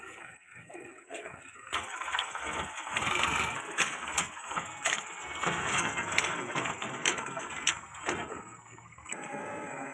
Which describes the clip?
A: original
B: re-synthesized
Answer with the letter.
B